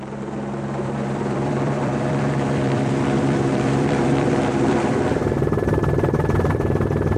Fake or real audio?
fake